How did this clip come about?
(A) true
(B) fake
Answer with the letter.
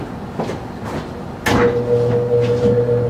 A